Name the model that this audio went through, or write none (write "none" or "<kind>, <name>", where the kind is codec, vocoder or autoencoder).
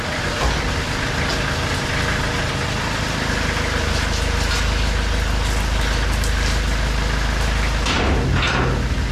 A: none